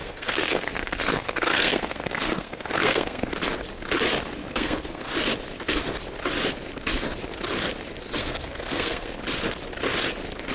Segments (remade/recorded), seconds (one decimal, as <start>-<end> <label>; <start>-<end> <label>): 0.0-3.3 remade; 3.3-4.4 recorded; 4.4-5.1 remade; 5.1-8.2 recorded; 8.2-9.2 remade; 9.2-10.5 recorded

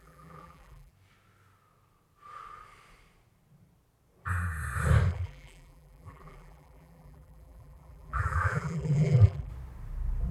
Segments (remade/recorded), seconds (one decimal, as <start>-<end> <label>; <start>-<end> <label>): 0.0-0.9 remade; 0.9-5.1 recorded; 5.1-9.5 remade; 9.5-10.3 recorded

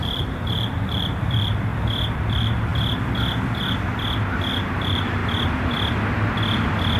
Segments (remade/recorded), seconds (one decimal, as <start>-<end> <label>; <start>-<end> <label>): 0.0-1.7 remade; 1.7-2.3 recorded; 2.3-2.7 remade; 2.7-4.5 recorded; 4.5-5.2 remade; 5.2-7.0 recorded

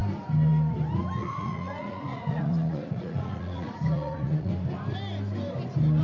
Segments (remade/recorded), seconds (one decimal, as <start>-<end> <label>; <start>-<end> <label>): 0.0-1.2 recorded; 1.2-4.5 remade; 4.5-6.0 recorded

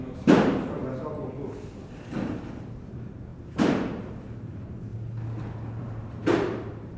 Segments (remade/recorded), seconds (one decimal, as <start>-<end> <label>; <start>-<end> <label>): 0.0-0.8 remade; 0.8-2.7 recorded; 2.7-4.9 remade; 4.9-5.8 recorded; 5.8-7.0 remade

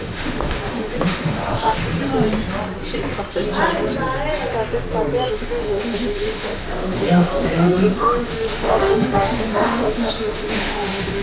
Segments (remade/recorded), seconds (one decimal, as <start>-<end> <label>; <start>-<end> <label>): 0.0-2.1 remade; 2.1-5.3 recorded; 5.3-11.2 remade

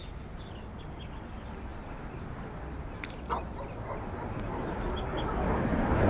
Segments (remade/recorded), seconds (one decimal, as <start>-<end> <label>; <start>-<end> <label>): 0.0-6.1 recorded